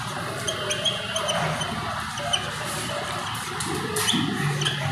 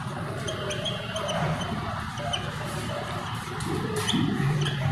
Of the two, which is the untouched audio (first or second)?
first